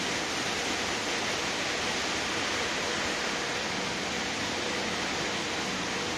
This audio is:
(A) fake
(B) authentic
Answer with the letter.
B